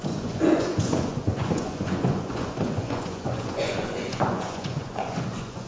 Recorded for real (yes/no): no